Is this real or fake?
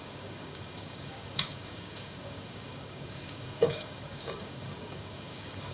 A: fake